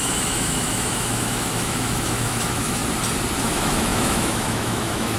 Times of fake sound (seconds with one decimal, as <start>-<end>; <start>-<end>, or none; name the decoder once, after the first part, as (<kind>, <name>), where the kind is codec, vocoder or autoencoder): 0.0-2.8 (autoencoder, DAC-VAE); 3.4-5.2